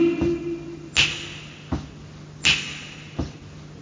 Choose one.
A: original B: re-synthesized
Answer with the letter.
A